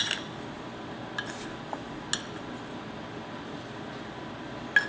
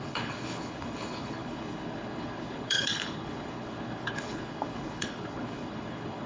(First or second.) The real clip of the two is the first